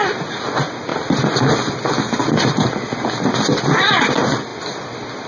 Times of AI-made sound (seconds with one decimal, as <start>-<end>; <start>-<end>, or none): none